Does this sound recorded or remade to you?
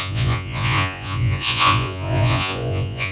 remade